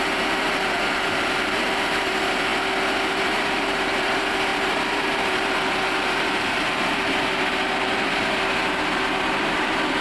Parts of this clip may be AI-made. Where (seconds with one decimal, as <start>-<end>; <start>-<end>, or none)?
0.0-2.5; 3.1-10.0